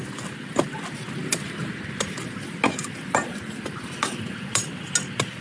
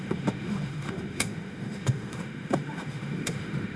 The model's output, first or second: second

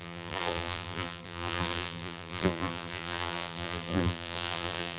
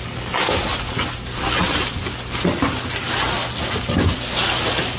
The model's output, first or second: first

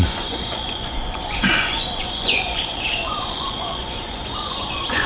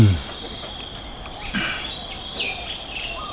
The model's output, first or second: first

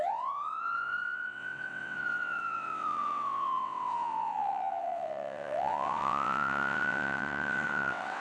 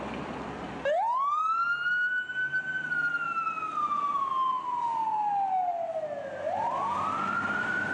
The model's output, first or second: first